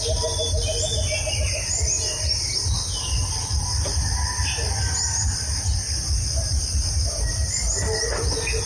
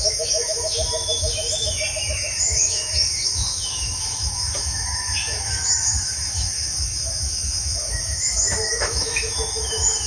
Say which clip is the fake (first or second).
second